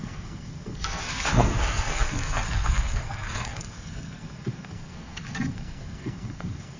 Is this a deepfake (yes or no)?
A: yes